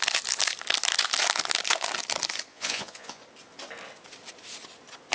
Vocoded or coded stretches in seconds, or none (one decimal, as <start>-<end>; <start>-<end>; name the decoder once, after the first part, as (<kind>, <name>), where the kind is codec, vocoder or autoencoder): 2.5-3.2 (vocoder, Vocos)